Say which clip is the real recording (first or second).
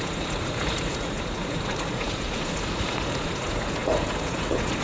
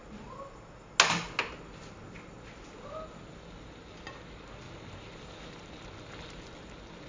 second